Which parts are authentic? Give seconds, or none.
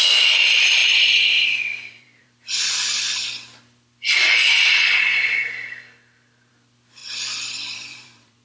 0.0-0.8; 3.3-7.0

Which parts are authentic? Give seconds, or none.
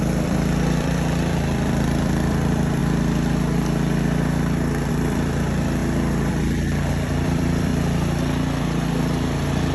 2.8-4.9; 5.8-6.3; 7.7-9.7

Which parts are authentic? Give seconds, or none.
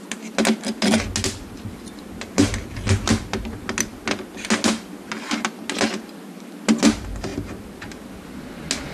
0.0-8.9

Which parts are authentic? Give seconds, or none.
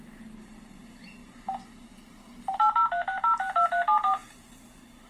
0.0-5.1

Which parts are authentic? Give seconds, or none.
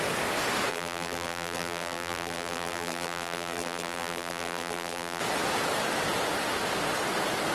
0.0-0.7; 5.2-7.5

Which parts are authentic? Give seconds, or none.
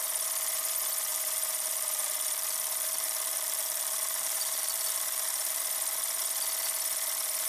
0.0-1.1; 5.6-7.5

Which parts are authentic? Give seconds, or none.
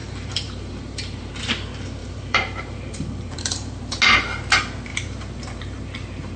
1.3-2.0; 3.8-4.9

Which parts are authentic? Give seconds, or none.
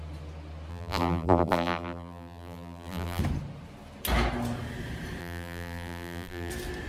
0.0-0.7; 3.2-5.2; 6.5-6.9